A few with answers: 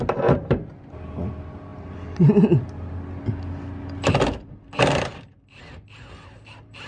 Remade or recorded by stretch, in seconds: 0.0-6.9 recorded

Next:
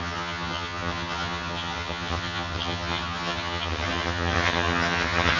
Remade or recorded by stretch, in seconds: 0.0-5.4 remade

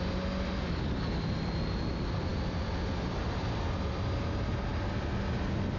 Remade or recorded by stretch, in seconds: 0.0-5.8 recorded

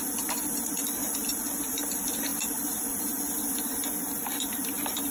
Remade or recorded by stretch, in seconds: 0.0-5.1 remade

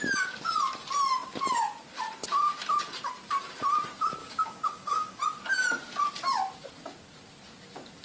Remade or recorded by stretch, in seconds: 0.0-4.2 recorded; 4.2-5.2 remade; 5.2-8.0 recorded